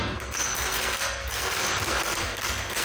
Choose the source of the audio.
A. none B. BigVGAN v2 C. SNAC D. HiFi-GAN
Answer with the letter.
C